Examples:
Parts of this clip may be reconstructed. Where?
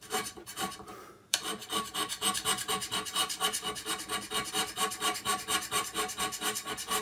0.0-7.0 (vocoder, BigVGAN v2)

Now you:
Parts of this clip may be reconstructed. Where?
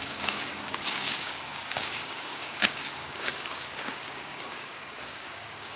0.0-5.8 (codec, DAC)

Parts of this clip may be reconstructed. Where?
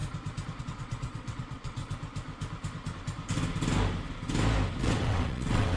0.6-1.8 (vocoder, WaveNeXt); 4.8-5.8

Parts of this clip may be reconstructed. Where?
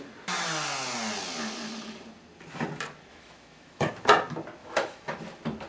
3.1-3.9 (autoencoder, DAC-VAE); 4.6-5.2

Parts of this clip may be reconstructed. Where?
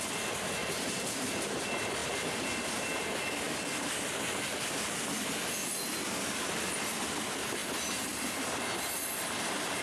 0.6-1.4 (vocoder, BigVGAN v2)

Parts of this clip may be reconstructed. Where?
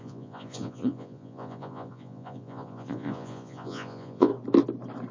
0.0-4.3 (vocoder, Vocos)